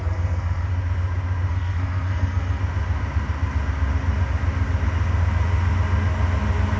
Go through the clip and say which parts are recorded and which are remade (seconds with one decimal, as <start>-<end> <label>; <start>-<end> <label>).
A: 0.0-0.7 remade; 0.7-1.5 recorded; 1.5-2.6 remade; 2.6-6.8 recorded